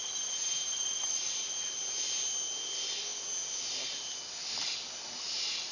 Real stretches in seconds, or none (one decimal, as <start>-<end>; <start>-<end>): 0.0-5.7